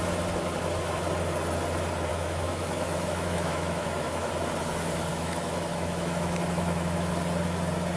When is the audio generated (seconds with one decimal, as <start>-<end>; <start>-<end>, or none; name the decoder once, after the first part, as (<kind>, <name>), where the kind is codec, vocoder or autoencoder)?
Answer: 2.1-4.3 (autoencoder, DAC-VAE); 5.1-7.1